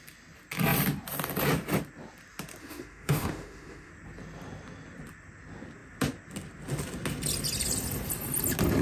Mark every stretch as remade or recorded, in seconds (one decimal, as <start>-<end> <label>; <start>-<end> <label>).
0.0-2.6 recorded; 2.6-3.9 remade; 3.9-8.8 recorded